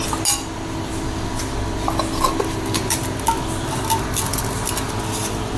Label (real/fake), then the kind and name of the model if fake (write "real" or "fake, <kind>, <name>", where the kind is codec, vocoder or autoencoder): real